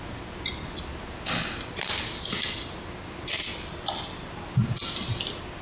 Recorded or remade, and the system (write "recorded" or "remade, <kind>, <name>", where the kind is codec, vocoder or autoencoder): recorded